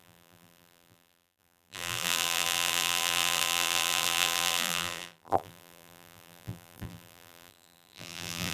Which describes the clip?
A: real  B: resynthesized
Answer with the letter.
B